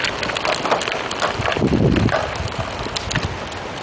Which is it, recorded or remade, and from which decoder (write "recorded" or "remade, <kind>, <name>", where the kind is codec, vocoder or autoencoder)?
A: recorded